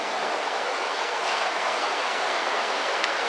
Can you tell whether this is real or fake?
fake